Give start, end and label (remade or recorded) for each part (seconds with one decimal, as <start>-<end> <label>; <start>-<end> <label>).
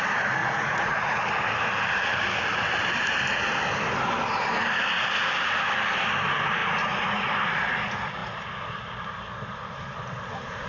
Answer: 0.0-0.4 recorded; 0.4-1.2 remade; 1.2-6.6 recorded; 6.6-7.3 remade; 7.3-10.7 recorded